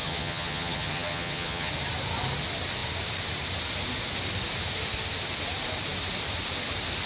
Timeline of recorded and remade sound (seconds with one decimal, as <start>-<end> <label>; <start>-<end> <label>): 0.0-1.7 remade; 1.7-7.1 recorded